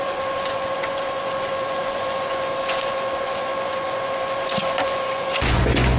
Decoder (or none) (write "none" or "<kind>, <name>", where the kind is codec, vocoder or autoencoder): vocoder, Vocos